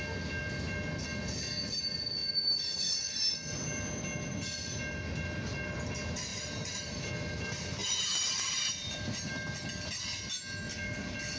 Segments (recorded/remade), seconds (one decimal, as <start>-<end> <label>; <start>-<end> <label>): 0.0-6.3 recorded; 6.3-6.9 remade; 6.9-7.8 recorded; 7.8-8.6 remade; 8.6-11.4 recorded